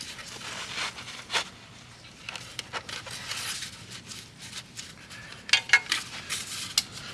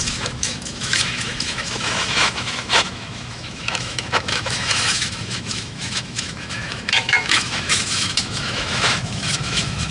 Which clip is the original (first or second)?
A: first